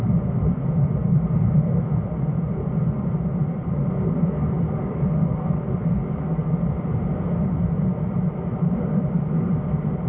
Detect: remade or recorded recorded